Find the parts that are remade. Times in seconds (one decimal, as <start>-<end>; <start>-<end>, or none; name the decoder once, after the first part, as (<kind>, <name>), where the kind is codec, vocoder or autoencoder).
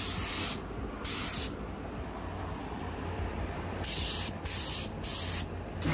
2.6-4.4 (vocoder, BigVGAN v2)